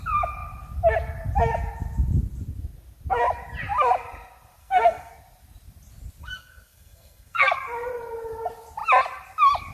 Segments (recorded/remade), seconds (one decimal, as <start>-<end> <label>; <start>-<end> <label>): 0.0-4.6 recorded; 4.6-5.1 remade; 5.1-6.2 recorded; 6.2-7.5 remade; 7.5-9.7 recorded